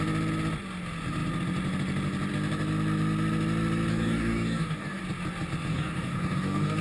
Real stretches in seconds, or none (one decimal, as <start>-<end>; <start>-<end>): 0.0-3.9; 5.0-5.7